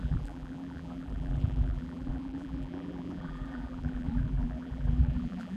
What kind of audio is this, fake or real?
fake